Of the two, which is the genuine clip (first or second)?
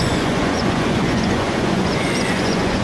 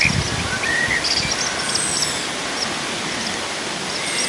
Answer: second